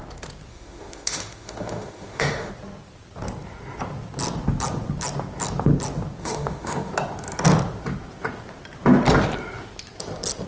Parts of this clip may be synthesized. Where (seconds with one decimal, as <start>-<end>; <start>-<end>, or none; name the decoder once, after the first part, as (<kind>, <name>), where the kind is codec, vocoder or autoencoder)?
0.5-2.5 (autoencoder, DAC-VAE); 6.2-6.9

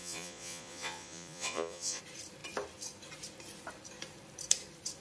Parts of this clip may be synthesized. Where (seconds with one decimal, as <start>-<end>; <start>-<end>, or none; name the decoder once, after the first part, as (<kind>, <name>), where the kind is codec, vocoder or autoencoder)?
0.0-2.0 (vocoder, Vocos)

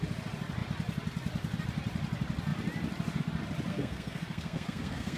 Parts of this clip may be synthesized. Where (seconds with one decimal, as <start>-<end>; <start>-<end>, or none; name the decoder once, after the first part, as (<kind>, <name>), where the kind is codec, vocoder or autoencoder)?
3.7-5.2 (codec, SNAC)

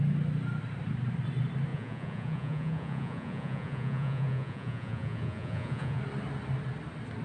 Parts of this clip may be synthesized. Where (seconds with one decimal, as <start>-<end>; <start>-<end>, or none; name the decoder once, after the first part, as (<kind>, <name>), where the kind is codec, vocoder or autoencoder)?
1.7-6.0 (vocoder, Vocos)

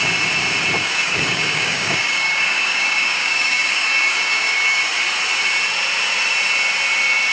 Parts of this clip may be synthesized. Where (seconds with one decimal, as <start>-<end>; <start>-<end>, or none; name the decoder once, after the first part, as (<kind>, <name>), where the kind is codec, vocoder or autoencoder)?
0.8-4.8 (codec, DAC)

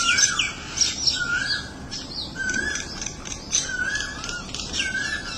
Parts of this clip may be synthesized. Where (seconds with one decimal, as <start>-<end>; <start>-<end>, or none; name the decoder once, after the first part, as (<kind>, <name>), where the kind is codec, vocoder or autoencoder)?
1.9-4.9 (vocoder, BigVGAN v2)

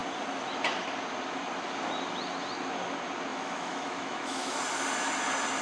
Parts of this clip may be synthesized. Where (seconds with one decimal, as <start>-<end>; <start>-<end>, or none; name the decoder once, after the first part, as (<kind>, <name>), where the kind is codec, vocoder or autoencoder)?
3.3-4.6 (autoencoder, DAC-VAE)